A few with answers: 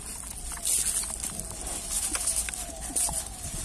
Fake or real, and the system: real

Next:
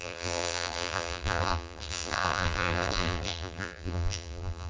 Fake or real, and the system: fake, vocoder, BigVGAN v2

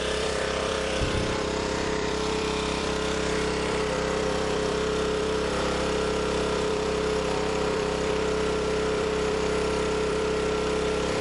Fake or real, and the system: fake, vocoder, BigVGAN v2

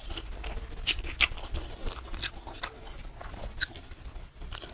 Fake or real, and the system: real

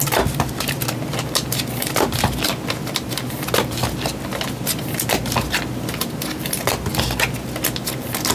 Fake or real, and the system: real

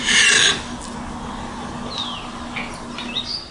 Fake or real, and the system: real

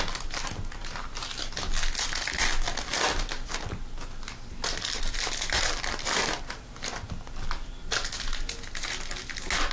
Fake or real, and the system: real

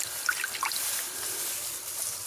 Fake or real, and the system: real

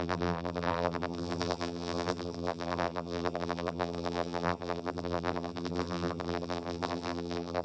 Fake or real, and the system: fake, vocoder, BigVGAN v2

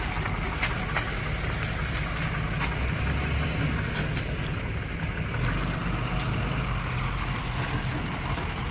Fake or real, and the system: real